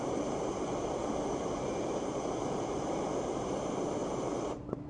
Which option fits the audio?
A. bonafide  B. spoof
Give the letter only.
B